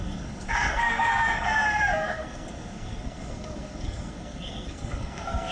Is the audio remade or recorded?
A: remade